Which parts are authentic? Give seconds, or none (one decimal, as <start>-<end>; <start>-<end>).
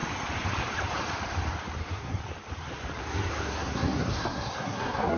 0.0-1.8; 2.2-3.0